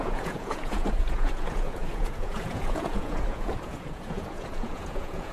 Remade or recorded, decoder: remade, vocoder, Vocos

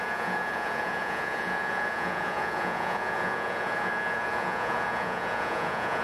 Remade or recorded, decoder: remade, vocoder, Vocos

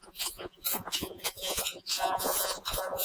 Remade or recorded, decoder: remade, vocoder, Vocos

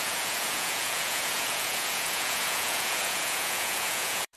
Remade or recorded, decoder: remade, vocoder, Vocos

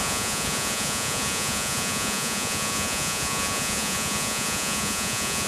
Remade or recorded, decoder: remade, vocoder, Vocos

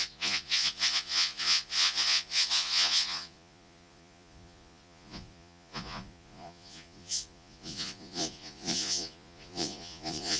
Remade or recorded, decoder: remade, vocoder, Vocos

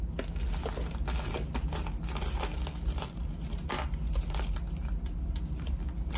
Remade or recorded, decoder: recorded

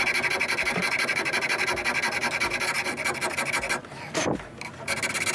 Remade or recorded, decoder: recorded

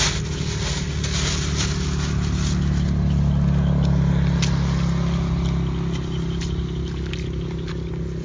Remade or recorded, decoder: recorded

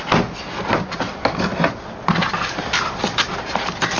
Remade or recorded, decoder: recorded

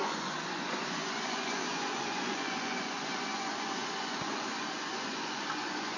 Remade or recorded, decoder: remade, vocoder, Vocos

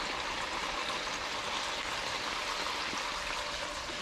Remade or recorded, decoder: recorded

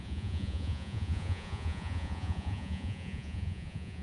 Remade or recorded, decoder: remade, vocoder, Vocos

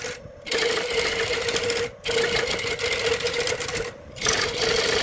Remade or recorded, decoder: recorded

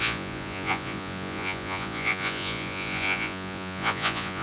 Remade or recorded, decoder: remade, vocoder, Vocos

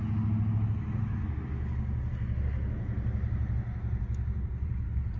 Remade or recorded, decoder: recorded